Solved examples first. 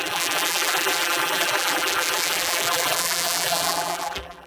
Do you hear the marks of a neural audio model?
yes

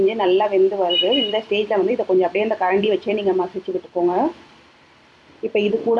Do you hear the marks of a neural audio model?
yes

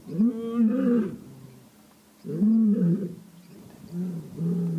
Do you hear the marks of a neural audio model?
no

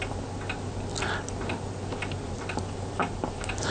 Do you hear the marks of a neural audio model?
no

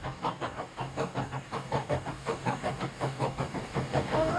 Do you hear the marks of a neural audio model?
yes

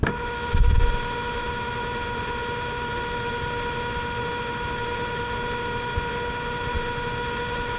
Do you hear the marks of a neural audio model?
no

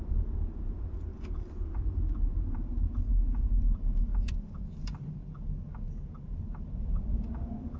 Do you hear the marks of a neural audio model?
yes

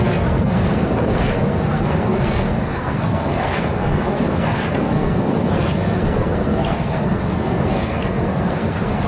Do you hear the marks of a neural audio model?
yes